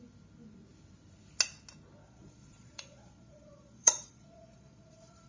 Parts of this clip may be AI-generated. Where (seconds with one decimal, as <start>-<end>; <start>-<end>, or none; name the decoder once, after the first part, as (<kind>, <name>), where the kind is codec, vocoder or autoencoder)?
2.0-5.3 (vocoder, Vocos)